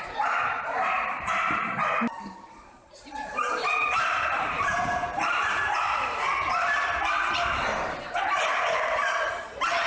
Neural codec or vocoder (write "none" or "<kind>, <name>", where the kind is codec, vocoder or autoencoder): vocoder, BigVGAN v2